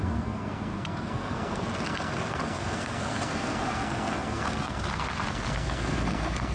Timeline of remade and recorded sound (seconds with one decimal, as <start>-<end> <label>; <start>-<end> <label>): 0.0-6.5 remade